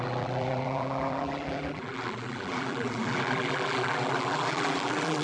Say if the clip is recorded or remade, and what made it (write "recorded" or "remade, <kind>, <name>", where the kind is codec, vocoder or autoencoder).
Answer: remade, vocoder, BigVGAN v2